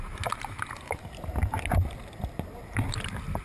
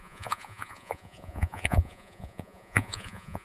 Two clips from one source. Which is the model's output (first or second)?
second